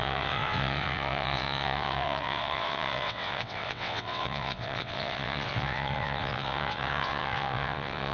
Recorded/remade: remade